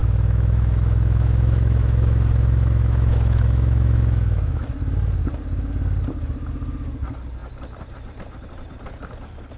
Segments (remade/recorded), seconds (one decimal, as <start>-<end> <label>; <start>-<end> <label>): 0.0-4.7 remade; 4.7-9.6 recorded